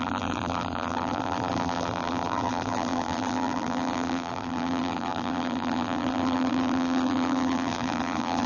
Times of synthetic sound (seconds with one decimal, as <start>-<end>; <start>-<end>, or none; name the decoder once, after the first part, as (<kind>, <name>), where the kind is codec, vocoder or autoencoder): 0.0-8.5 (vocoder, BigVGAN v2)